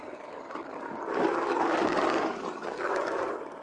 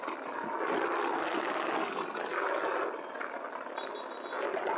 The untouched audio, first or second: second